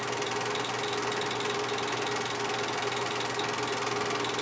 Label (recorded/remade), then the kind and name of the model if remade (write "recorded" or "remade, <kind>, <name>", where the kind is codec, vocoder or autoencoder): recorded